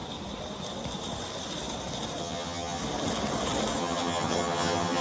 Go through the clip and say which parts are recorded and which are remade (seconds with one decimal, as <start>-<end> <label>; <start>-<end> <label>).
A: 0.0-2.2 recorded; 2.2-2.8 remade; 2.8-3.8 recorded; 3.8-5.0 remade